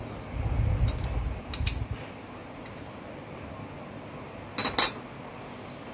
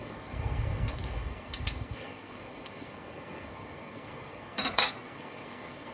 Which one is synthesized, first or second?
second